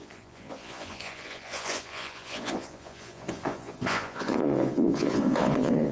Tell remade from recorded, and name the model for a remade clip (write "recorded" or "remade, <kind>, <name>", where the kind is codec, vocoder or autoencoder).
remade, vocoder, Vocos